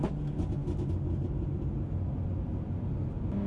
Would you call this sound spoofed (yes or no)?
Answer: no